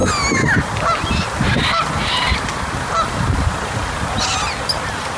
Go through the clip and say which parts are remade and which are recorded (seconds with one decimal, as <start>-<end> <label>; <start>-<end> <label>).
0.0-5.2 recorded